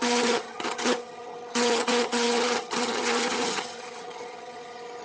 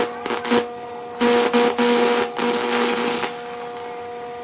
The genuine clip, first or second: second